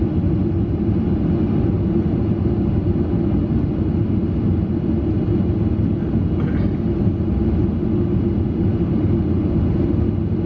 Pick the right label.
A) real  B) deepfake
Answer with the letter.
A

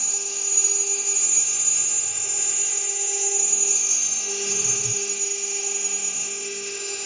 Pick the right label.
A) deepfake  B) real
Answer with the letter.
A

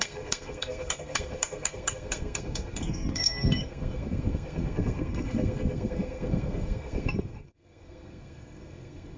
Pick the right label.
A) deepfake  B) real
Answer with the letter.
A